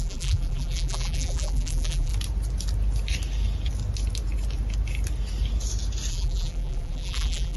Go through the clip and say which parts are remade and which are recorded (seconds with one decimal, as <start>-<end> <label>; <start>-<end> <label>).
0.0-2.1 remade; 2.1-6.1 recorded; 6.1-7.6 remade